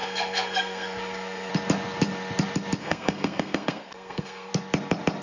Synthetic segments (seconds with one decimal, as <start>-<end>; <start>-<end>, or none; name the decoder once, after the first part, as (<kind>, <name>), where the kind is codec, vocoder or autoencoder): 0.0-1.5 (codec, SNAC); 2.8-4.5

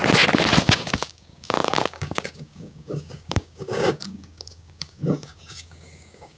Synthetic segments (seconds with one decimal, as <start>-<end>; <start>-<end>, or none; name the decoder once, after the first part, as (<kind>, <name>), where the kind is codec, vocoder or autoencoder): 0.6-6.4 (codec, DAC)